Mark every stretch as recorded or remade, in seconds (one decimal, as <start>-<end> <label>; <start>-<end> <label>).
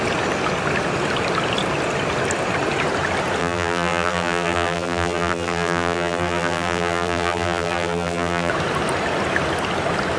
0.0-3.4 recorded; 3.4-8.5 remade; 8.5-10.2 recorded